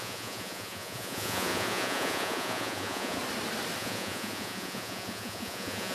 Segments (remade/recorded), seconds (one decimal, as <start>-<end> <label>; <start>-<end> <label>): 0.0-3.2 remade; 3.2-3.8 recorded; 3.8-5.9 remade